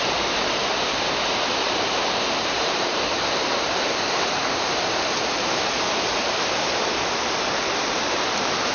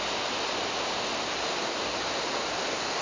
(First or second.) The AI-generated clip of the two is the first